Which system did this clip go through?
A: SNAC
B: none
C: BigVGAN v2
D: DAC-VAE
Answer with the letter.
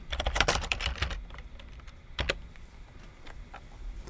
C